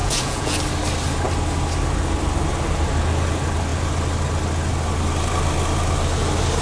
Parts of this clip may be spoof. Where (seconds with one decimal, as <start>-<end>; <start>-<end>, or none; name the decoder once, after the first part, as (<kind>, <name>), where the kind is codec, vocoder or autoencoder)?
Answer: 0.0-0.6 (vocoder, Vocos)